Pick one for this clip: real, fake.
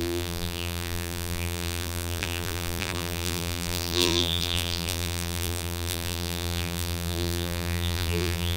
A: fake